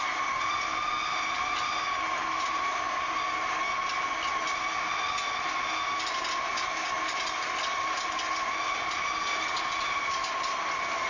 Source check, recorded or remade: recorded